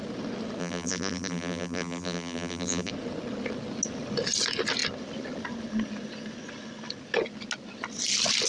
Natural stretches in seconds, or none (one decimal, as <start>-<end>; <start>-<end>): 0.0-0.6; 2.9-8.5